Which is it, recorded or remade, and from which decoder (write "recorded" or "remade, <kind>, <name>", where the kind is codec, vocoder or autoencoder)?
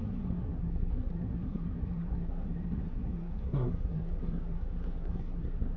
remade, codec, SNAC